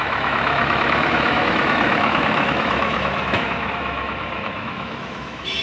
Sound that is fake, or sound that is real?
fake